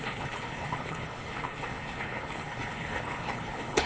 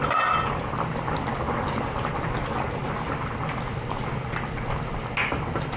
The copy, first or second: first